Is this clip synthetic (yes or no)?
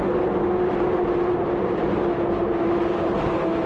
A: no